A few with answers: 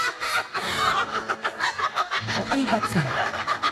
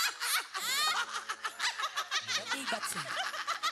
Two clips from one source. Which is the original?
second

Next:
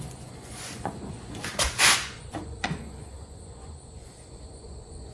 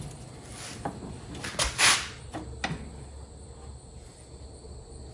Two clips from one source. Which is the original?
second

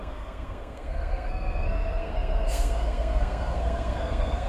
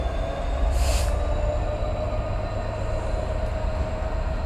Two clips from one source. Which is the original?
second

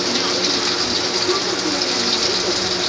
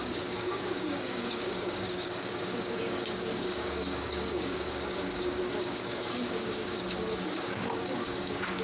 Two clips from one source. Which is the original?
first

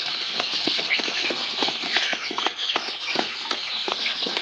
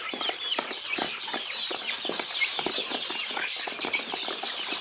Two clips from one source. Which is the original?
second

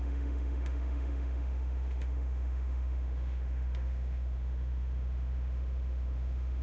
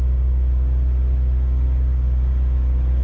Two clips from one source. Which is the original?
second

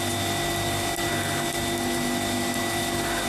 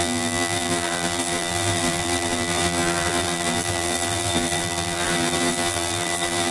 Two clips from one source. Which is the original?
first